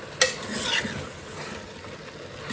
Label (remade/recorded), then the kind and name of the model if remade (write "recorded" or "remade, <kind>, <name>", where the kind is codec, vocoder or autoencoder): recorded